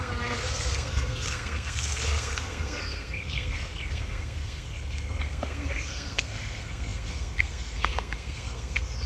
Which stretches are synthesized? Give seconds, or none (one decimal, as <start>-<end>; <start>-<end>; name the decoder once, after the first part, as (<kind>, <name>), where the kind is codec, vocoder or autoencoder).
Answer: 0.0-9.1 (codec, SNAC)